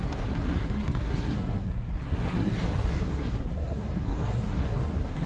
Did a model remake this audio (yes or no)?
yes